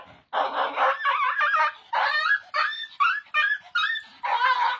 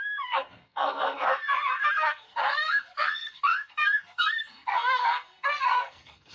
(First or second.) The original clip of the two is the first